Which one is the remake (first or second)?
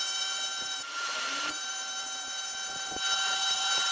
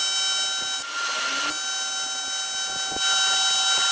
first